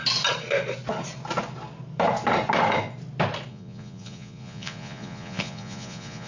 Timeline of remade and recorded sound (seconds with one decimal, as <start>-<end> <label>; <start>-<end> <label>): 0.0-3.5 recorded; 3.5-6.3 remade